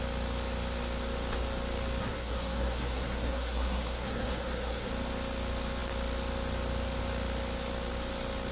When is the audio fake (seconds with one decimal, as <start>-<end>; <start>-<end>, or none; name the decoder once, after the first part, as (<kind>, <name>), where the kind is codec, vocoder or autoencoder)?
2.0-4.9 (codec, SNAC)